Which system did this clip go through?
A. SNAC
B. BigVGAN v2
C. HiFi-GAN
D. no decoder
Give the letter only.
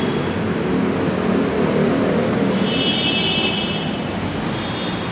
D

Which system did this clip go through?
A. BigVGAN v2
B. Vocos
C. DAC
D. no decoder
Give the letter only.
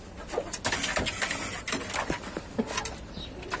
D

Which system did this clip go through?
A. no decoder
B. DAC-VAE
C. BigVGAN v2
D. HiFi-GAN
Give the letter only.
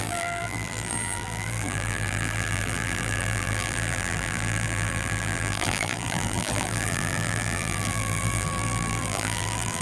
C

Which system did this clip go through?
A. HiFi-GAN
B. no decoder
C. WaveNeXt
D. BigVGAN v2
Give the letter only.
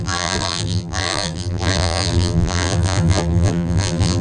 D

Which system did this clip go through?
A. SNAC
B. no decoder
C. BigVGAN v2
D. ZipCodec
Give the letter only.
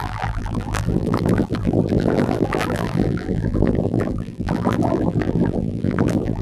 C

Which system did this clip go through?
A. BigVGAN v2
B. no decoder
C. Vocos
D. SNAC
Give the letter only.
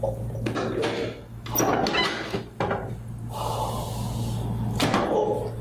B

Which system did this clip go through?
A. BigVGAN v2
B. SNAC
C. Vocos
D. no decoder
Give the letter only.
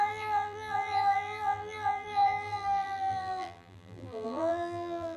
A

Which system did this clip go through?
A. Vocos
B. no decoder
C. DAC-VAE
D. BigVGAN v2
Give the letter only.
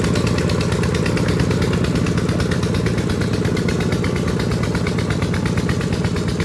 B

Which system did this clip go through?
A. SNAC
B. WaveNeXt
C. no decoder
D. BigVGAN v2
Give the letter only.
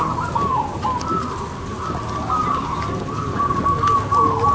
C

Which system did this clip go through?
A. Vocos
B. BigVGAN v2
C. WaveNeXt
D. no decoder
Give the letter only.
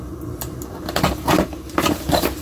B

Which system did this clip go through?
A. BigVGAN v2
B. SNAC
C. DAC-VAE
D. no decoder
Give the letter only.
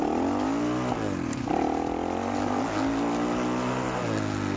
D